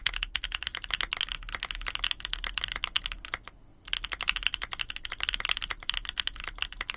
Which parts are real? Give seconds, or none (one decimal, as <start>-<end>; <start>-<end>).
0.0-7.0